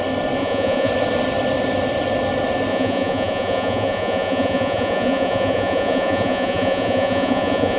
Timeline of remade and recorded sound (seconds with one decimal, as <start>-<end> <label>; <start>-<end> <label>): 0.0-0.4 recorded; 0.4-0.9 remade; 0.9-2.7 recorded; 2.7-7.8 remade